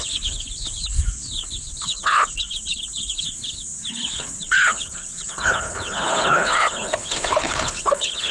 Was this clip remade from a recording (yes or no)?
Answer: yes